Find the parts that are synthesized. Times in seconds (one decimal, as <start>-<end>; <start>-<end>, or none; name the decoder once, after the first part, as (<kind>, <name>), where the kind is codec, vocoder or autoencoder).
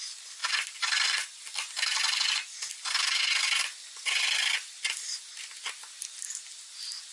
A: none